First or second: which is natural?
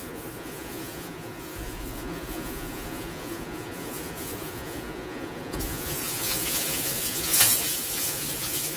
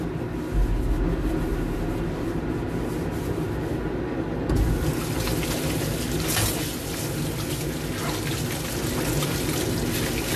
second